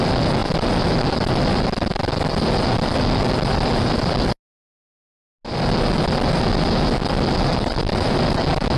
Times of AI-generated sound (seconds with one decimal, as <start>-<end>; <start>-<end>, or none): none